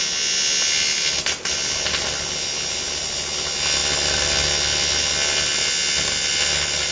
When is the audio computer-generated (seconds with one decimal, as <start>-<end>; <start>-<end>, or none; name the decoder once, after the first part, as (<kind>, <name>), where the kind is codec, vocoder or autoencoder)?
none